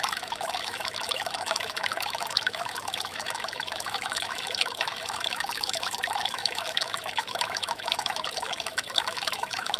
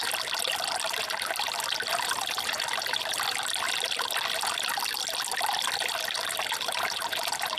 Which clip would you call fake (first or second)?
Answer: first